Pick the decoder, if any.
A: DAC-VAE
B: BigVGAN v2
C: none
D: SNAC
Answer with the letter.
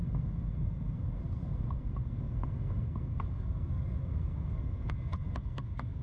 D